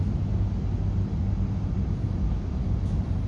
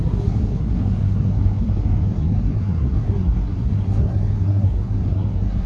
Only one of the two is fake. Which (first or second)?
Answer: second